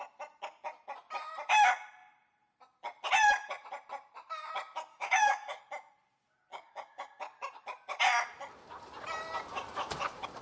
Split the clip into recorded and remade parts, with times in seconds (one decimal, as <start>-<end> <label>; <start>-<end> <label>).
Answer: 0.0-4.9 recorded; 4.9-5.6 remade; 5.6-6.5 recorded; 6.5-7.2 remade; 7.2-10.4 recorded